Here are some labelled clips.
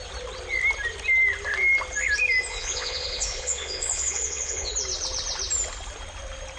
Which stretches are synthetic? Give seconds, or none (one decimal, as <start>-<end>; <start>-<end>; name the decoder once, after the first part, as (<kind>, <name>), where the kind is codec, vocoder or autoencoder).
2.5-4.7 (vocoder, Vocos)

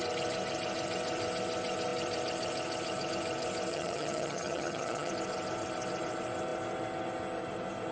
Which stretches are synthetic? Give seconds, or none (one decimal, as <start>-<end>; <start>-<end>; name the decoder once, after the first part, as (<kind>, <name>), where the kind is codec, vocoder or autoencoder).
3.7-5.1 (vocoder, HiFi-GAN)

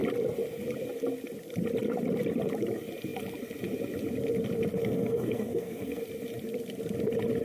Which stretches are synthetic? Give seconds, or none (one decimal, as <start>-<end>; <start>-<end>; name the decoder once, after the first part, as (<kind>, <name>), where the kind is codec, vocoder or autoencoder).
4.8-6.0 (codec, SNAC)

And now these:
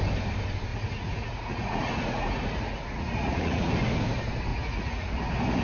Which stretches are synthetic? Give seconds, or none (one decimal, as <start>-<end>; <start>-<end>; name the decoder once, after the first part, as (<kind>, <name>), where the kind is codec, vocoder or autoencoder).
0.7-3.7 (vocoder, Vocos); 4.5-5.1

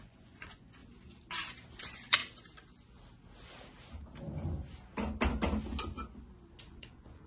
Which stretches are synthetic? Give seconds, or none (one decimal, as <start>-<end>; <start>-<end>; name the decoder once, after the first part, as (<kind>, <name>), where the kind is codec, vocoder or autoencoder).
0.0-0.8 (vocoder, Vocos); 1.8-2.2; 6.6-7.3